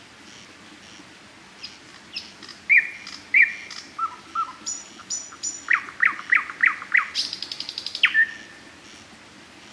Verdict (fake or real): real